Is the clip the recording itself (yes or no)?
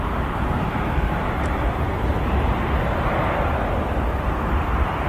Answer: no